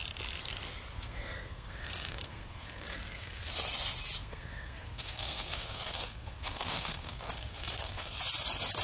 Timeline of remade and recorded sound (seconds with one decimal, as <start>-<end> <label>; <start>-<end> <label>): 0.0-0.9 recorded; 0.9-3.5 remade; 3.5-4.2 recorded; 4.2-8.2 remade; 8.2-8.8 recorded

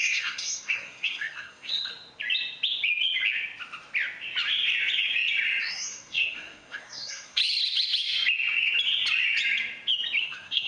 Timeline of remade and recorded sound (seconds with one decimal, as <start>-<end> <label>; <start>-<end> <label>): 0.0-1.9 remade; 1.9-5.6 recorded; 5.6-7.4 remade; 7.4-10.2 recorded; 10.2-10.7 remade

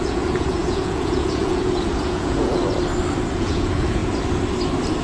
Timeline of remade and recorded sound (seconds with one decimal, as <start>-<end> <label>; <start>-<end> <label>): 0.0-2.6 remade; 2.6-3.3 recorded; 3.3-4.0 remade; 4.0-5.0 recorded

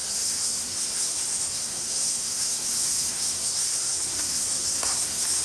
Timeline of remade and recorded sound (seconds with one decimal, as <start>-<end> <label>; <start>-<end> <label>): 0.0-5.4 remade

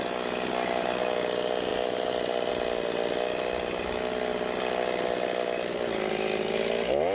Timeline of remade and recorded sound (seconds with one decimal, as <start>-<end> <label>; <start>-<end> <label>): 0.0-7.1 recorded